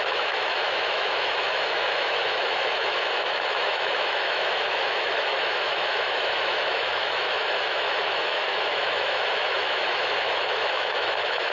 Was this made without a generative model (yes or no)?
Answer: no